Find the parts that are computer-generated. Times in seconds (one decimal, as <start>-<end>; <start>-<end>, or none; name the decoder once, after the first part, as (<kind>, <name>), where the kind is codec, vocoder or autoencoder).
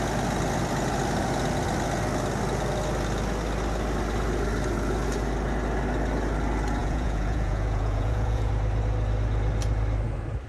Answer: 6.8-8.5 (vocoder, Vocos)